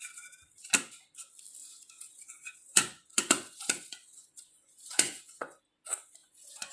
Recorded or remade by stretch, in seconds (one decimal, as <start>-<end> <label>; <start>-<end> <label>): 0.0-1.6 recorded; 1.6-5.6 remade; 5.6-6.2 recorded; 6.2-6.7 remade